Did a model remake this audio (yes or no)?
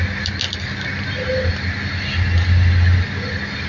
no